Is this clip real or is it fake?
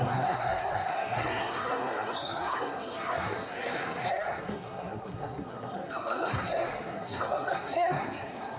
fake